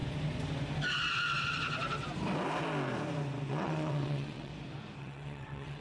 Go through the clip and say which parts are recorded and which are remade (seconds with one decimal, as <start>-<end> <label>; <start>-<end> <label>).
0.0-3.5 recorded; 3.5-4.5 remade; 4.5-5.0 recorded; 5.0-5.8 remade